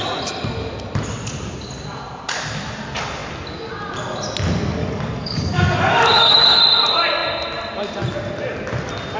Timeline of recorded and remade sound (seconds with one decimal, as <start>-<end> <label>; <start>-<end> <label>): 0.0-4.8 recorded; 4.8-6.6 remade; 6.6-9.2 recorded